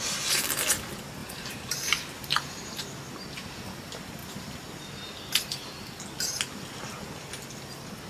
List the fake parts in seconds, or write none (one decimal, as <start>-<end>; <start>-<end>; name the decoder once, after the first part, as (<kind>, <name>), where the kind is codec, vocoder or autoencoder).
1.2-2.8 (vocoder, BigVGAN v2); 4.2-4.9